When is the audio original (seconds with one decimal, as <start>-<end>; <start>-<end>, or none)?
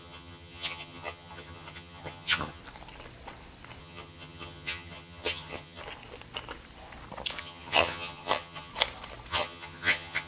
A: 2.6-3.8; 5.8-7.4; 8.7-9.3